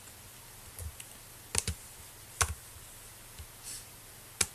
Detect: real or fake real